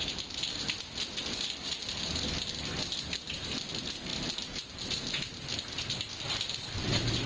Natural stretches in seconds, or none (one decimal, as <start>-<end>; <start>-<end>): 0.0-7.3